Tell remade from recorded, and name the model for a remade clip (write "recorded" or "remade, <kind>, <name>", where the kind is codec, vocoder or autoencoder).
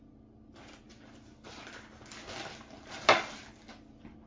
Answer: recorded